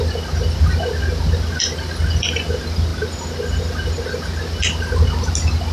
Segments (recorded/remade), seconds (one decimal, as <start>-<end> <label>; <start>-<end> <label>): 0.0-5.7 recorded